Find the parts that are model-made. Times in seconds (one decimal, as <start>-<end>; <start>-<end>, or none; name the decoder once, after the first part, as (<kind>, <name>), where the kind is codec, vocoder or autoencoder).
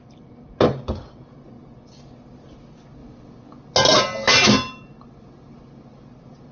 none